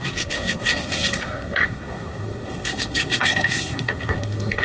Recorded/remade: remade